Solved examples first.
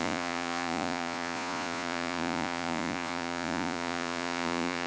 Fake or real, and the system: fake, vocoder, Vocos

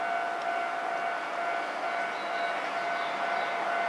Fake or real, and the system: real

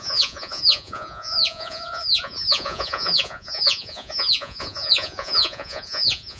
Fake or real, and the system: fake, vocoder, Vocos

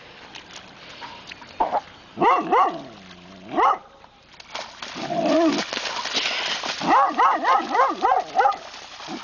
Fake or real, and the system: real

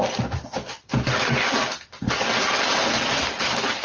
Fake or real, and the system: real